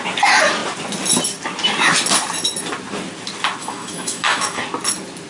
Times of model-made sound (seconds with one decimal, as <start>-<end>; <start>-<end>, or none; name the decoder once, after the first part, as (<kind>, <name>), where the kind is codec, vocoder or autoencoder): 3.6-4.6 (autoencoder, DAC-VAE)